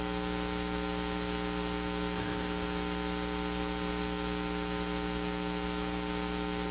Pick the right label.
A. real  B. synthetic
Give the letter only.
A